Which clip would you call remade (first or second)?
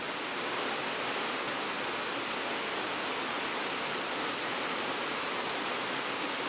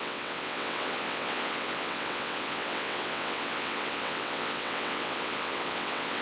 second